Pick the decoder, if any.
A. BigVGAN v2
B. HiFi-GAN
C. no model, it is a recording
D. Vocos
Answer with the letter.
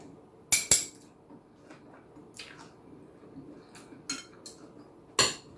C